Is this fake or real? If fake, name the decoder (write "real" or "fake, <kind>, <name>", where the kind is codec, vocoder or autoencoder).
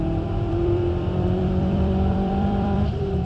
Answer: fake, vocoder, BigVGAN v2